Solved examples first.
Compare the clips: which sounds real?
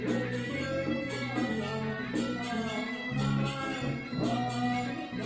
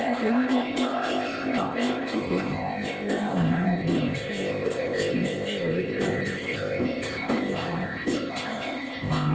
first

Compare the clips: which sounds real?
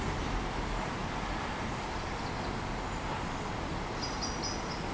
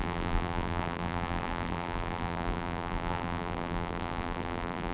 first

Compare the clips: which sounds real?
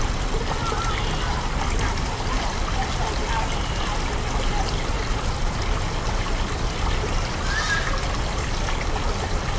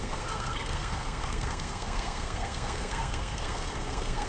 first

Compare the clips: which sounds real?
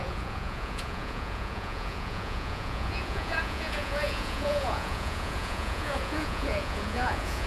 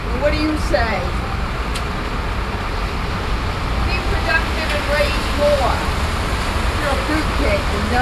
second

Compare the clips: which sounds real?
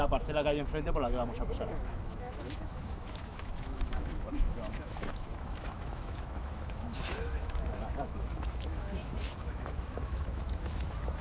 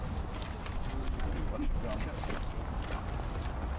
second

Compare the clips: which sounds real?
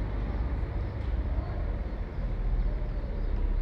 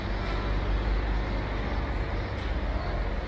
second